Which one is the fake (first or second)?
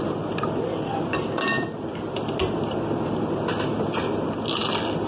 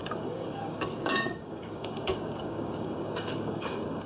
second